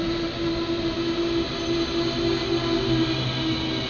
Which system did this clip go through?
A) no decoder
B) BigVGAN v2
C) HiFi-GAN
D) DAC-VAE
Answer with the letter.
A